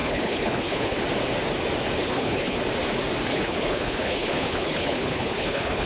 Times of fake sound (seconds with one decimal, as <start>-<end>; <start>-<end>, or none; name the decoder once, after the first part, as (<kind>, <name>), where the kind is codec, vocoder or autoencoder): 0.0-1.0 (codec, HILCodec); 2.0-2.6; 3.3-5.9